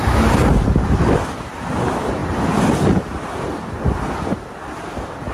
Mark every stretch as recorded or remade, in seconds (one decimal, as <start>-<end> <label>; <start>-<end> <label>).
0.0-5.3 recorded